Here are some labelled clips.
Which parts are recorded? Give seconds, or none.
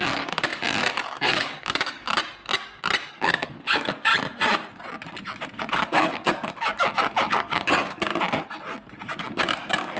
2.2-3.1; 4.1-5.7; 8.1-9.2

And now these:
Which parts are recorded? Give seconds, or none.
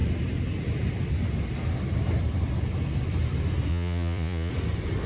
0.0-3.7; 4.5-5.1